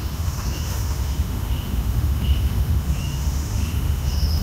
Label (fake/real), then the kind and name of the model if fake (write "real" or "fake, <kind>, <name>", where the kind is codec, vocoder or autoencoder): fake, autoencoder, DAC-VAE